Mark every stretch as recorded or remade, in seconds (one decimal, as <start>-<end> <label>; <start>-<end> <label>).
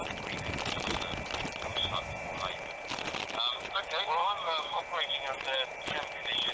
0.0-4.2 recorded; 4.2-4.8 remade; 4.8-6.5 recorded